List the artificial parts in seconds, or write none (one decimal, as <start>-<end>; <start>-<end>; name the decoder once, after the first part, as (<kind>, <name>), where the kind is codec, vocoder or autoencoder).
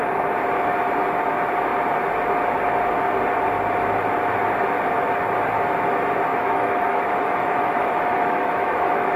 6.3-9.2 (autoencoder, DAC-VAE)